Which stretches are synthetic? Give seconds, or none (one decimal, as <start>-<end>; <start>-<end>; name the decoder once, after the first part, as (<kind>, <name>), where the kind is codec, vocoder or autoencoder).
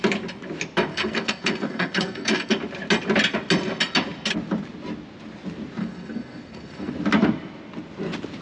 0.9-2.5 (codec, SNAC); 5.8-6.9